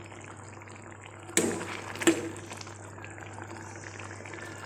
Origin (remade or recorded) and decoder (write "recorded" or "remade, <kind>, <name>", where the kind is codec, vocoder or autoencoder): recorded